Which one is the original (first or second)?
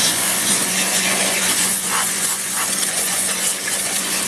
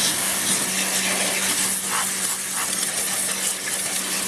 second